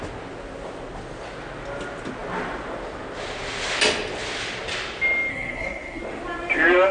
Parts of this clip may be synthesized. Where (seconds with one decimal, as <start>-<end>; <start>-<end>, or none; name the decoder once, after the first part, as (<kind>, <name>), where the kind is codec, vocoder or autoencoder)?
5.3-6.0 (codec, SNAC)